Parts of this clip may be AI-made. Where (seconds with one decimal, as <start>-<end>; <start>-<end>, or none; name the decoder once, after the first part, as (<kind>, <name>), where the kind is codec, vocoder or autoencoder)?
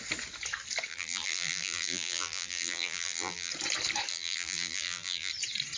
0.9-3.5 (vocoder, BigVGAN v2); 4.1-5.3